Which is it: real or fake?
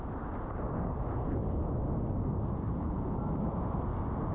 real